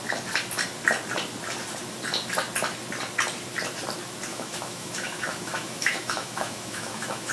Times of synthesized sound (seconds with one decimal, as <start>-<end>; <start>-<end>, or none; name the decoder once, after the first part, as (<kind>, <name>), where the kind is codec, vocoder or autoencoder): 4.3-7.3 (autoencoder, DAC-VAE)